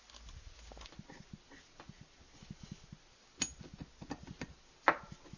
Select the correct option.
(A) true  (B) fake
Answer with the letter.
A